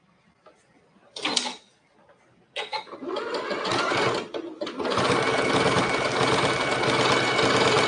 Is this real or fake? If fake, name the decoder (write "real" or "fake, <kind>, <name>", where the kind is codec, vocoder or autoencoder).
real